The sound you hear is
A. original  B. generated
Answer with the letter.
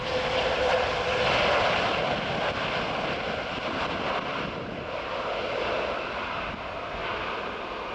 A